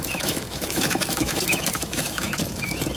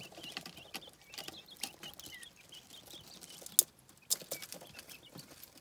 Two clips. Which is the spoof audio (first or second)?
first